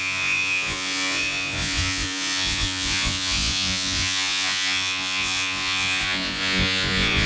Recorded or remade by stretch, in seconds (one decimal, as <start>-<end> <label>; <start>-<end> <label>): 0.0-7.3 remade